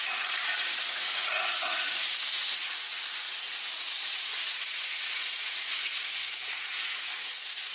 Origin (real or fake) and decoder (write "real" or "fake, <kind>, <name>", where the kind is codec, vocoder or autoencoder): fake, vocoder, Vocos